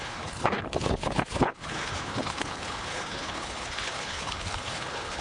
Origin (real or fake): fake